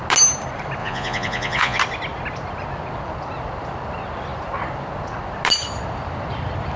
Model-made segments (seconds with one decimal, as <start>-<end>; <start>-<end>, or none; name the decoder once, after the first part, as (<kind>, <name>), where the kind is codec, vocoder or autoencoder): 0.8-1.8 (vocoder, Vocos)